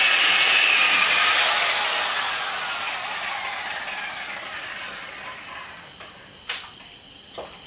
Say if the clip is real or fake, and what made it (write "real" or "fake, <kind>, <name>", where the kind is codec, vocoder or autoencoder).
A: real